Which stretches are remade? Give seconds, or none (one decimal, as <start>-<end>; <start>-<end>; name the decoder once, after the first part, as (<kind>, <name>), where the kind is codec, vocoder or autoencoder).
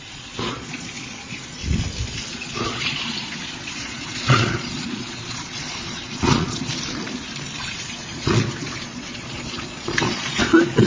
0.0-1.6 (vocoder, Vocos); 2.3-6.7; 7.6-10.9